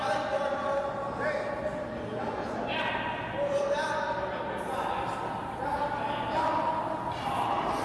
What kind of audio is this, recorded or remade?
recorded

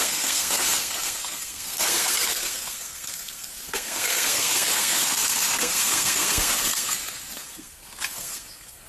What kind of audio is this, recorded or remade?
remade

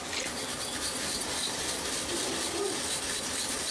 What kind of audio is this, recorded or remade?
recorded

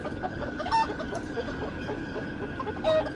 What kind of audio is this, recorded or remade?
remade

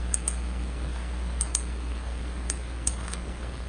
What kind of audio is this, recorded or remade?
remade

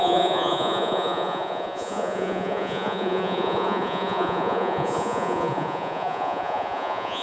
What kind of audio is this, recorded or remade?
remade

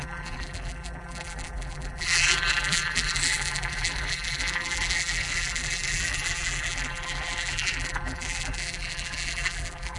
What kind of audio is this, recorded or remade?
remade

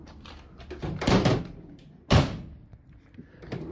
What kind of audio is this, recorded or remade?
recorded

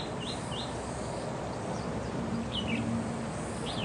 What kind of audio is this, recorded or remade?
recorded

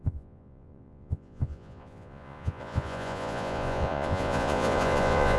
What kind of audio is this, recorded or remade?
remade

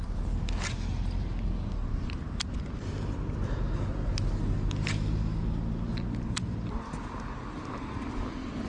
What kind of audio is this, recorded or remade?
recorded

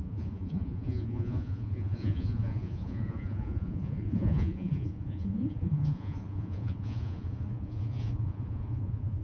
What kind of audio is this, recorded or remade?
remade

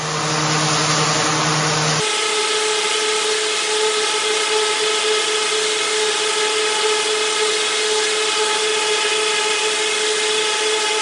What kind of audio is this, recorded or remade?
recorded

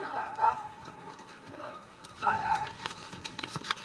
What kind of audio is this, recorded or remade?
remade